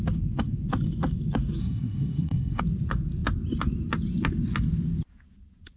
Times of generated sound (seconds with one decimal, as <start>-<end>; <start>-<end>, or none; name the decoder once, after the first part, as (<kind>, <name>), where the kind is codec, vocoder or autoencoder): 1.6-2.6 (codec, SNAC)